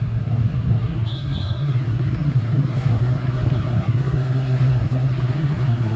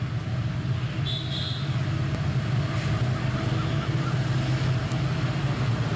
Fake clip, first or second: first